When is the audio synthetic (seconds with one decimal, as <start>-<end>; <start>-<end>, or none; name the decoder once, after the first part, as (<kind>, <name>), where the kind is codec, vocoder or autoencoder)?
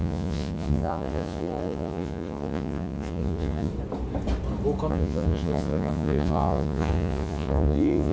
0.0-3.7 (vocoder, Vocos); 4.9-8.1